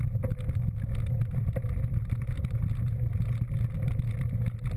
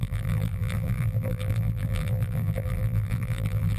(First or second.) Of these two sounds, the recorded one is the first